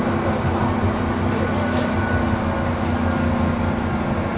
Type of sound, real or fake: real